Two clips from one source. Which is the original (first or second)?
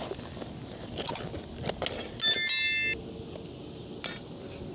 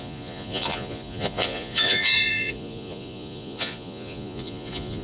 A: first